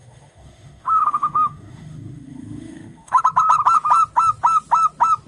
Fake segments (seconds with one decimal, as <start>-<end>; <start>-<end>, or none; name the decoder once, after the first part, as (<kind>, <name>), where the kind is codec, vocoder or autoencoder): 0.0-3.2 (autoencoder, DAC-VAE)